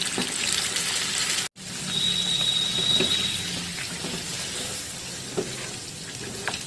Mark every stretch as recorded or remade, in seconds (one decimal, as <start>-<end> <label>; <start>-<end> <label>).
0.0-6.7 recorded

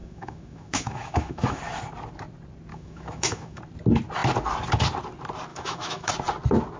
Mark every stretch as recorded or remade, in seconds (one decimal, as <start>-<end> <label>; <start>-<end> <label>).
0.0-1.6 remade; 1.6-2.7 recorded; 2.7-3.6 remade; 3.6-5.5 recorded; 5.5-6.1 remade; 6.1-6.8 recorded

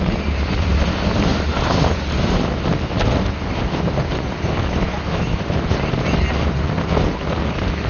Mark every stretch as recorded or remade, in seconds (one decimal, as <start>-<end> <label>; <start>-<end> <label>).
0.0-4.6 recorded; 4.6-5.4 remade; 5.4-7.9 recorded

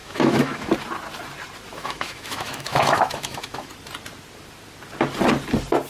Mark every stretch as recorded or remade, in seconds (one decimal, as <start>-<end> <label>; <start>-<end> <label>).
0.0-0.7 remade; 0.7-1.7 recorded; 1.7-3.7 remade; 3.7-5.9 recorded

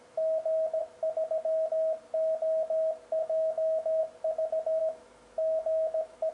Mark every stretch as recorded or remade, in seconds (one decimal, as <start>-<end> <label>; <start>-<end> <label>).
0.0-3.2 recorded; 3.2-4.0 remade; 4.0-4.8 recorded; 4.8-6.3 remade